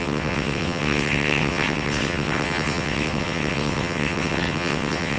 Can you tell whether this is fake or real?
fake